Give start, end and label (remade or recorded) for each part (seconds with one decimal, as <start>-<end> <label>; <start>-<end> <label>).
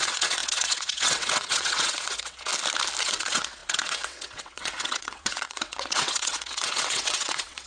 0.0-2.5 remade; 2.5-3.0 recorded; 3.0-7.7 remade